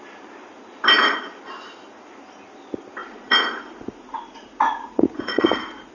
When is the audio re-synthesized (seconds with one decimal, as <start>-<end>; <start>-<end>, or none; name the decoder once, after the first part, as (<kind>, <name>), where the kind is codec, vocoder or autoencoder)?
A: 3.0-5.9 (vocoder, Vocos)